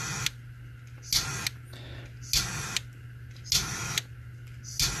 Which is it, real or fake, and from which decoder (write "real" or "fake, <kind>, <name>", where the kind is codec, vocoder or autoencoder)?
real